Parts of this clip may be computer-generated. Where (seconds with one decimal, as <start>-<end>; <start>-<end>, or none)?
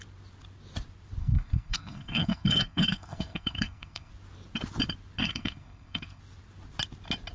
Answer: 1.2-4.1; 5.2-6.2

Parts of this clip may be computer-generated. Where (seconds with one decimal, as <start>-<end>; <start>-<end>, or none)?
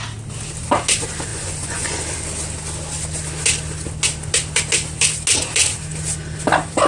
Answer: 1.3-2.0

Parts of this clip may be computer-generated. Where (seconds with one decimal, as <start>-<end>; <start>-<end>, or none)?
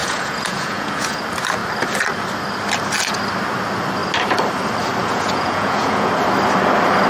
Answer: 0.0-1.2; 5.0-6.1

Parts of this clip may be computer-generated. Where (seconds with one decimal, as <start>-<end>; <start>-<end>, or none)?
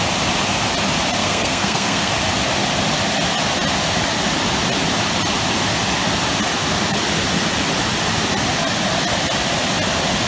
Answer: 1.2-2.1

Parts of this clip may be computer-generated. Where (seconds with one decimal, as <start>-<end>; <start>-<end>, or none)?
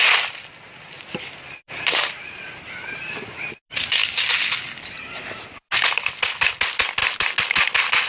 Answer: none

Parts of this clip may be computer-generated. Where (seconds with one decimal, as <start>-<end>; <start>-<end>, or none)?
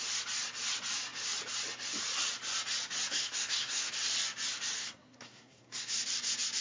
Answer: 3.1-3.9; 4.8-5.9